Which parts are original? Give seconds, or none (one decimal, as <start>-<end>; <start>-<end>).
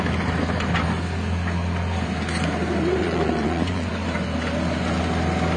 0.0-3.0; 3.9-5.6